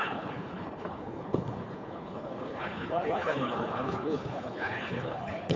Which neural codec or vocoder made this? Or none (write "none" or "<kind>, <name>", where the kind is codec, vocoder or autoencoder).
codec, HILCodec